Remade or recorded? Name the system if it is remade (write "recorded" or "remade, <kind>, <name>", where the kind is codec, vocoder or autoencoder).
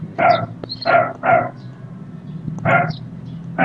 recorded